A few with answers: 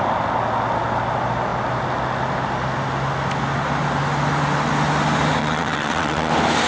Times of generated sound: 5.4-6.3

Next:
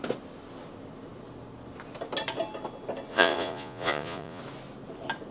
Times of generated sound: 3.1-4.4

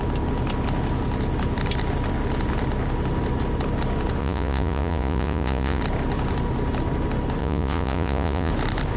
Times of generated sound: 4.2-5.8; 7.4-8.5

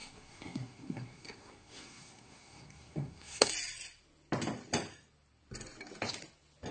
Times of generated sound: 0.0-3.5

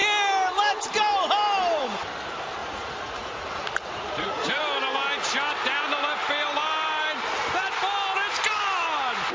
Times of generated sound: 2.6-4.6

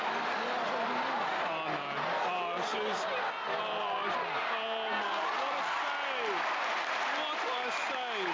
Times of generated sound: none

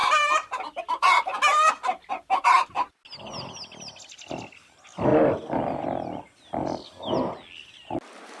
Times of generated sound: 0.0-0.8; 1.5-2.1